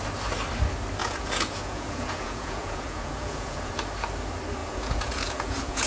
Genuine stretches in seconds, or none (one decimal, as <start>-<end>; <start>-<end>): 0.0-1.0; 3.7-4.6